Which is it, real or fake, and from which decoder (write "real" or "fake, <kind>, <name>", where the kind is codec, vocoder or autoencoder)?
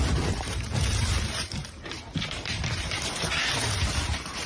fake, vocoder, BigVGAN v2